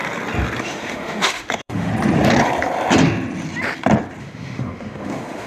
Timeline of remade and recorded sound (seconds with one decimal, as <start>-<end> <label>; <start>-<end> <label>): 0.0-0.6 recorded; 0.6-1.9 remade; 1.9-4.2 recorded; 4.2-5.5 remade